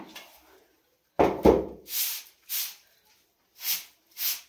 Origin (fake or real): real